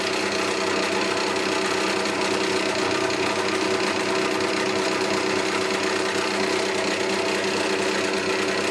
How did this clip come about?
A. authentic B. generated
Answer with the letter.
A